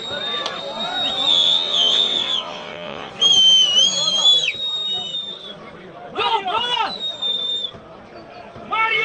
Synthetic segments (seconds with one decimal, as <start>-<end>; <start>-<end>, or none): 1.3-3.1